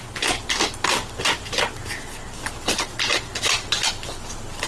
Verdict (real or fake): real